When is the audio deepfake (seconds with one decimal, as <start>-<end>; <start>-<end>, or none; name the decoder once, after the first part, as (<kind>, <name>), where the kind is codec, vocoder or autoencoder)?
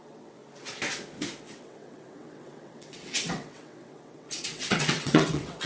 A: 0.0-0.4 (vocoder, WaveNeXt); 1.4-5.7